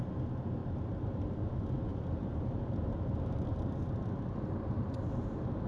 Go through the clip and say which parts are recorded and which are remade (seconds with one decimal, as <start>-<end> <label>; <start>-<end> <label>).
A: 0.0-0.6 recorded; 0.6-1.5 remade; 1.5-1.9 recorded; 1.9-4.8 remade; 4.8-5.7 recorded